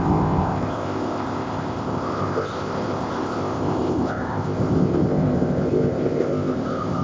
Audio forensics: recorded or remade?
remade